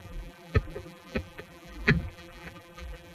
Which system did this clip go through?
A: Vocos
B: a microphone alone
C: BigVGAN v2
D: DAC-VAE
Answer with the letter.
C